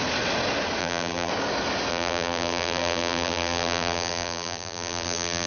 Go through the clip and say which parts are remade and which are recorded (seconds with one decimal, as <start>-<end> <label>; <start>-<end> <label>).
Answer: 0.0-0.8 recorded; 0.8-1.3 remade; 1.3-1.9 recorded; 1.9-5.5 remade